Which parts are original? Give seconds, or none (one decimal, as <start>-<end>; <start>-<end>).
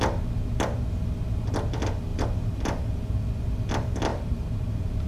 0.0-2.1; 3.2-4.1